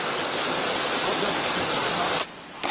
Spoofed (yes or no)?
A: no